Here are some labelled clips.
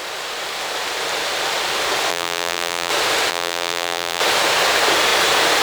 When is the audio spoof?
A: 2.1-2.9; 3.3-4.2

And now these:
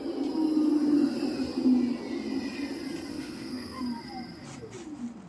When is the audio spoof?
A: 3.1-3.8

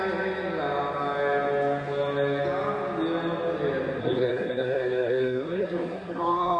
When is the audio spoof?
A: 4.0-6.6

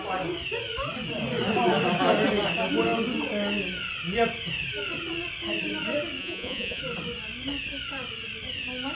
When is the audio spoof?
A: 6.2-6.8

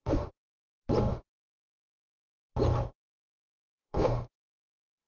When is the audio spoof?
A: 0.0-0.6; 1.1-2.2; 3.6-5.1

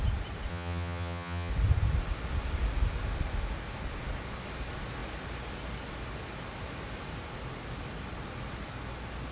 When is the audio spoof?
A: 0.5-1.5

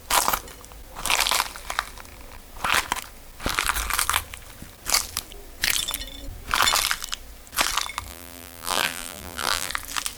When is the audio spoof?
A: 8.1-9.7